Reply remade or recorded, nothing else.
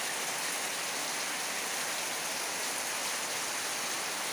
recorded